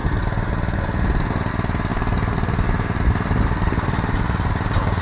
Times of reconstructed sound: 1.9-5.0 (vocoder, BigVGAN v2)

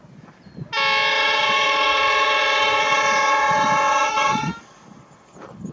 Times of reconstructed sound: 1.1-4.5 (vocoder, WaveNeXt)